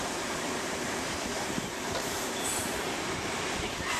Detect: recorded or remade remade